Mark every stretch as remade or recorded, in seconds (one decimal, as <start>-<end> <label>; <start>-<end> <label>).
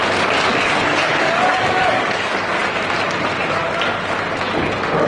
0.0-0.5 recorded; 0.5-2.6 remade; 2.6-5.1 recorded